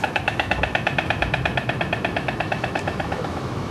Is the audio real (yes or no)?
no